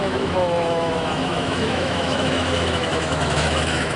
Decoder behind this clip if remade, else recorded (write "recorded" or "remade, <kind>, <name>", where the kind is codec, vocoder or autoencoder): remade, autoencoder, DAC-VAE